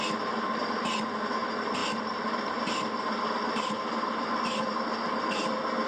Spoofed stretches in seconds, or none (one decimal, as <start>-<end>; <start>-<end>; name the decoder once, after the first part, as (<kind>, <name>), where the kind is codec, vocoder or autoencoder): none